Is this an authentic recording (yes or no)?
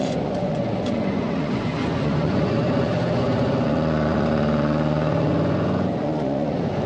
no